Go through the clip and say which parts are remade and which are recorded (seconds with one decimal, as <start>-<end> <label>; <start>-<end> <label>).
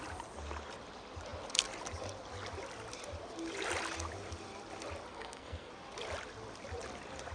0.0-5.1 recorded; 5.1-5.7 remade; 5.7-7.3 recorded